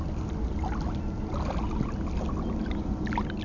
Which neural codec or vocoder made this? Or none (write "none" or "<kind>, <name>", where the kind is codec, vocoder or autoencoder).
none